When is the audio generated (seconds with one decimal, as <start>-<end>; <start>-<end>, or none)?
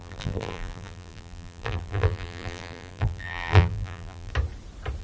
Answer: 0.0-4.3